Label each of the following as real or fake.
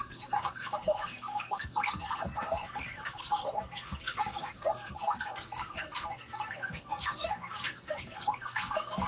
fake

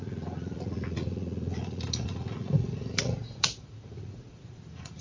fake